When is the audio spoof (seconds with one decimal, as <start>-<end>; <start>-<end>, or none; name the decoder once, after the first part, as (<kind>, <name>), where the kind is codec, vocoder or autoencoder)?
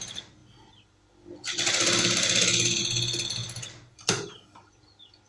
3.4-5.3 (vocoder, BigVGAN v2)